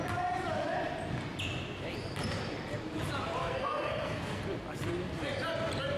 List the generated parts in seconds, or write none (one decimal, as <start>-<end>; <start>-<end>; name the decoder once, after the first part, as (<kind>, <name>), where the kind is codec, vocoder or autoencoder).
3.4-4.4 (codec, SNAC)